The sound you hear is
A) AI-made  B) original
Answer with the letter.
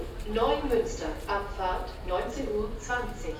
B